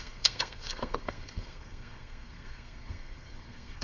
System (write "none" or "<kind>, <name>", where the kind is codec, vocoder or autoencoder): codec, SNAC